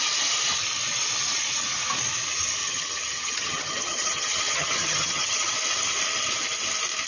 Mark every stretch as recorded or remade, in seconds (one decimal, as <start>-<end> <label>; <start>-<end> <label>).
0.0-2.6 recorded; 2.6-5.5 remade; 5.5-7.1 recorded